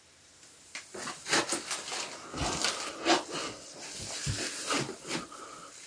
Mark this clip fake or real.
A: real